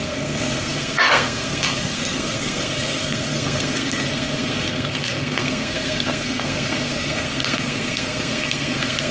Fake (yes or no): yes